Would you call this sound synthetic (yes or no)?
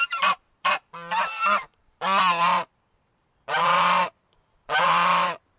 yes